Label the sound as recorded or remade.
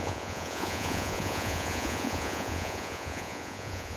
remade